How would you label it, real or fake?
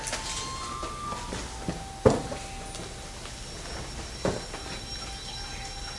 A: real